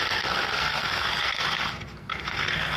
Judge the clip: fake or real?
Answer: fake